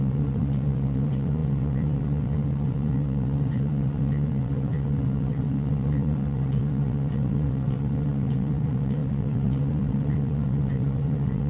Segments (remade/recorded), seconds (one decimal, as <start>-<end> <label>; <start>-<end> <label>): 0.0-11.5 remade